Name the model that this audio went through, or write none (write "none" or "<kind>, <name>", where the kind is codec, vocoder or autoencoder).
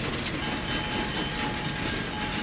none